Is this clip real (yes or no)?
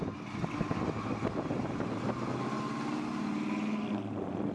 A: yes